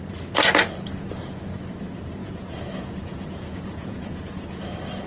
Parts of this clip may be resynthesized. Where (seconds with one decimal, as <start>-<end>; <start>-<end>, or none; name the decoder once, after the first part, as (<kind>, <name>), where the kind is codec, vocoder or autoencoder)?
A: 1.1-1.6 (vocoder, Vocos); 2.2-4.6